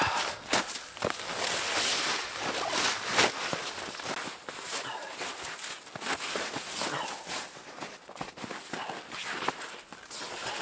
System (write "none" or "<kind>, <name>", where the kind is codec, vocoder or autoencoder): none